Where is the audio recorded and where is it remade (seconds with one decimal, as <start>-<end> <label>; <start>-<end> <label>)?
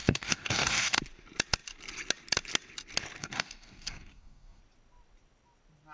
0.0-1.0 remade; 1.0-3.2 recorded; 3.2-4.6 remade; 4.6-5.9 recorded